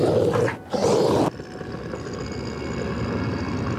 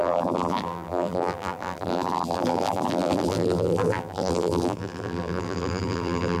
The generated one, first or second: second